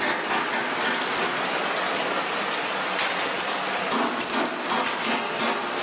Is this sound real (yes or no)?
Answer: yes